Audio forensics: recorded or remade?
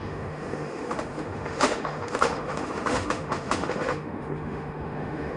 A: remade